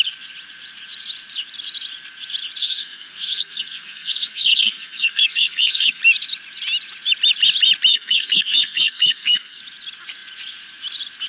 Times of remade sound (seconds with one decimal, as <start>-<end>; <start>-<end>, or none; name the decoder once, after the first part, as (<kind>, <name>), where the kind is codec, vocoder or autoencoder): 2.6-6.0 (codec, SNAC); 7.9-9.6